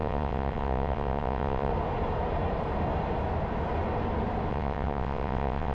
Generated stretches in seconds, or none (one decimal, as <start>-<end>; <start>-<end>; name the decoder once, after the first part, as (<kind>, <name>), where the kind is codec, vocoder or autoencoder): 0.0-1.7 (vocoder, WaveNeXt); 4.5-5.7